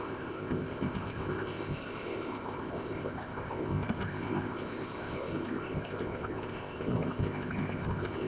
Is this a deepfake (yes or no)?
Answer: yes